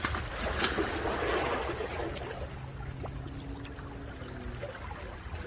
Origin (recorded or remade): recorded